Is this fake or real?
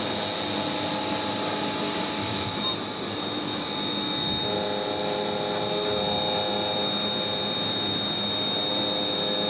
real